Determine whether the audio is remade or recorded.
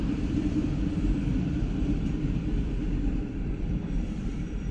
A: remade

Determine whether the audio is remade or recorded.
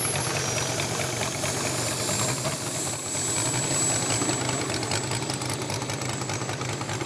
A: recorded